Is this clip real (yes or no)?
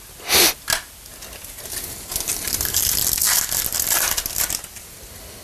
yes